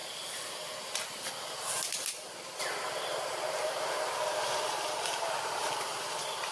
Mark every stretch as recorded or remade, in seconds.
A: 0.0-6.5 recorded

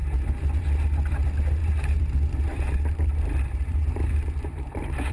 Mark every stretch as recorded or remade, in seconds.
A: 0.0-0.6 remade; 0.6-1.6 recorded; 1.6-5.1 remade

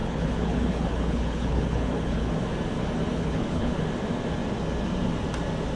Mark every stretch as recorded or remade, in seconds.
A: 0.0-2.3 remade; 2.3-3.1 recorded; 3.1-3.8 remade; 3.8-5.8 recorded

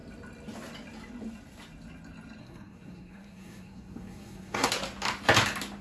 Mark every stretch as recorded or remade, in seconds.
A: 0.0-2.4 recorded; 2.4-4.7 remade; 4.7-5.8 recorded